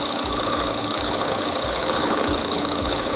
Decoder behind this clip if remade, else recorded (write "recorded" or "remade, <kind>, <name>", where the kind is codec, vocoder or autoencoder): remade, codec, HILCodec